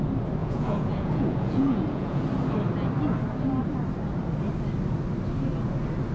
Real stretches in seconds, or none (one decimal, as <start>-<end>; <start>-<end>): 0.0-0.4; 2.2-6.1